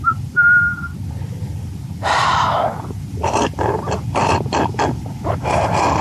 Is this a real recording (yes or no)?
yes